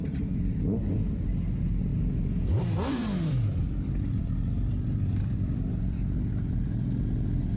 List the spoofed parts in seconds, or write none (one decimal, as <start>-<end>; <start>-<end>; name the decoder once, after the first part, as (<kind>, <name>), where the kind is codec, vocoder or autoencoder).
0.0-1.9 (vocoder, BigVGAN v2); 2.6-7.6

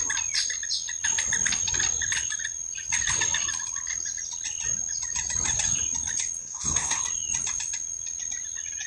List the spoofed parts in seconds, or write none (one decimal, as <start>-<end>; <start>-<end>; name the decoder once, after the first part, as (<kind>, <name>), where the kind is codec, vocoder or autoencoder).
6.4-7.0 (codec, SNAC)

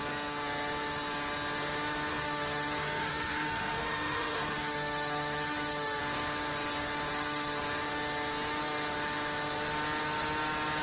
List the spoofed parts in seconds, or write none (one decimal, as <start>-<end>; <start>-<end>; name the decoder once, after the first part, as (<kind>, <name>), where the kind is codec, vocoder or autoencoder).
2.1-6.0 (autoencoder, DAC-VAE); 7.1-7.6

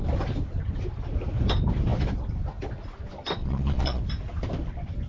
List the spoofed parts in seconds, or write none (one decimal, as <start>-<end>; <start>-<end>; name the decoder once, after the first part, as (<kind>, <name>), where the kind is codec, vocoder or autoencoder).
3.4-4.0 (vocoder, Vocos)

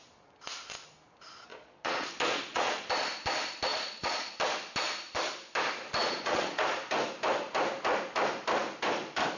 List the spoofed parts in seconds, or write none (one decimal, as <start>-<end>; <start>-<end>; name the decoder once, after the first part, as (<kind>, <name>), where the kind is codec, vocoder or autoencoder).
1.5-2.9 (vocoder, Vocos); 3.7-4.3; 6.0-6.6

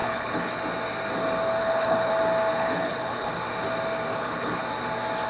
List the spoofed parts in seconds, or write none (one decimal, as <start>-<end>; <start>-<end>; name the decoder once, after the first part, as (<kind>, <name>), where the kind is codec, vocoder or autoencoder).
0.0-0.6 (codec, HILCodec); 1.6-2.1; 2.5-3.3; 4.1-4.6